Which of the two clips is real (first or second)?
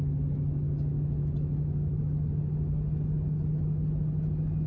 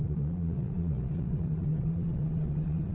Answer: first